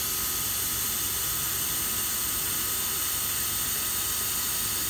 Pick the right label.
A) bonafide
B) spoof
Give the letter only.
A